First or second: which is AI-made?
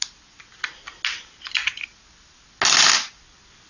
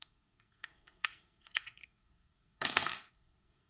second